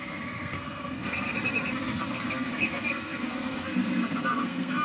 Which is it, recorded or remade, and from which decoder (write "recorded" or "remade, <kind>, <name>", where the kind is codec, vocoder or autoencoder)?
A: remade, codec, SNAC